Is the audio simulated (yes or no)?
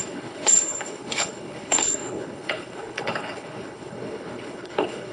yes